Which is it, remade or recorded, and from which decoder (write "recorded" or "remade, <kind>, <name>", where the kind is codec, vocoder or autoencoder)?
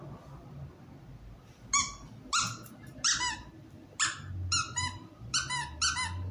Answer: recorded